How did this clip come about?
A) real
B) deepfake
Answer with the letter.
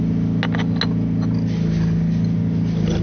A